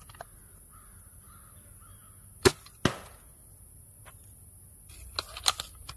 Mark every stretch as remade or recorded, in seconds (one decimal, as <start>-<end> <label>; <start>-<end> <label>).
0.0-6.0 recorded